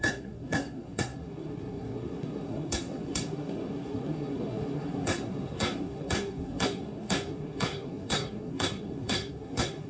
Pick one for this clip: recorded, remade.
remade